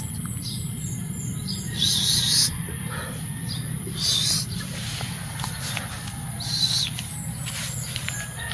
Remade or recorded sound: recorded